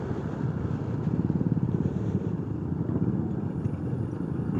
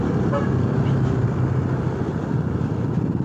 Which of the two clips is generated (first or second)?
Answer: first